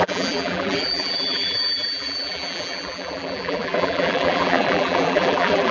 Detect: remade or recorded remade